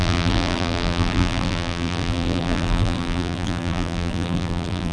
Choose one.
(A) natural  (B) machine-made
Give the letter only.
B